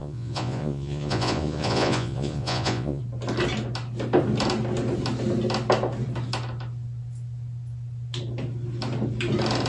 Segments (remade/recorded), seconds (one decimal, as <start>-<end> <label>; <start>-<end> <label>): 0.0-3.0 remade; 3.0-9.7 recorded